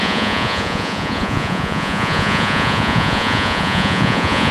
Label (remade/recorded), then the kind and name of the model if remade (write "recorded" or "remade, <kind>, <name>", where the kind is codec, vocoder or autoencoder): remade, vocoder, Vocos